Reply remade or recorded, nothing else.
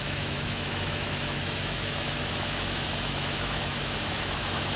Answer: remade